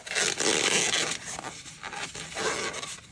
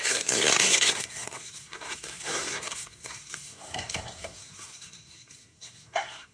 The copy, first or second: second